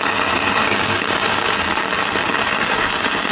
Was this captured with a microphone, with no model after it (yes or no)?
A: yes